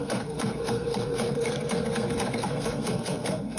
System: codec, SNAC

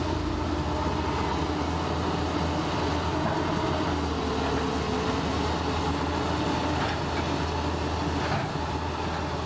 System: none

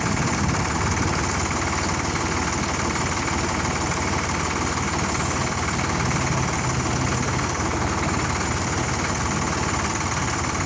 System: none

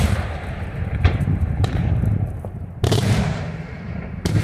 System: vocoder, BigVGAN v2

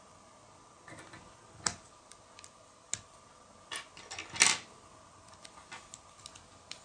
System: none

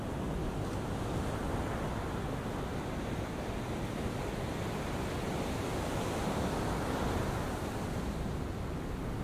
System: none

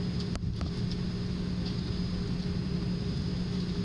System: none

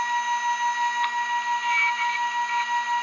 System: none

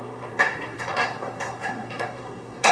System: codec, SNAC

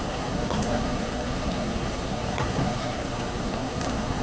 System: codec, SNAC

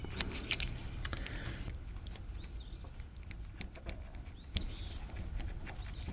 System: none